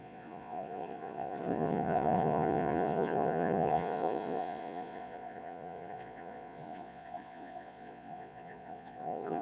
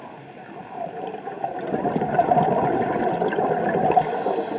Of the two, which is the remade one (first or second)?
first